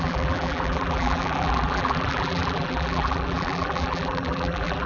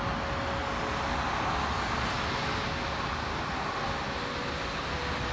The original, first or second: second